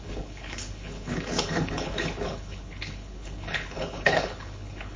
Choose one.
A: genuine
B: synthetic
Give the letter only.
B